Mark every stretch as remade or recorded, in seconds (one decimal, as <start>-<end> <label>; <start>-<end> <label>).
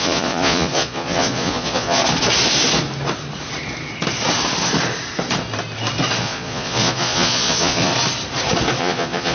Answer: 0.0-2.0 remade; 2.0-6.2 recorded; 6.2-7.9 remade; 7.9-8.8 recorded; 8.8-9.3 remade